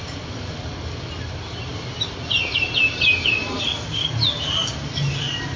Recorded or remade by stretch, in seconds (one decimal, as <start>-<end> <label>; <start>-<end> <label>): 0.0-5.6 recorded